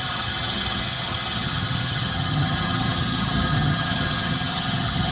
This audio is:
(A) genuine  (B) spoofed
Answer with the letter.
B